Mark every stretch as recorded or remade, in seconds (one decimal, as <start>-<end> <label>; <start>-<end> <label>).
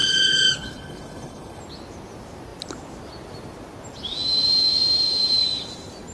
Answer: 0.0-1.6 remade; 1.6-6.1 recorded